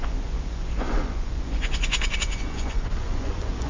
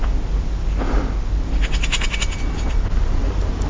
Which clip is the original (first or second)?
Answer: second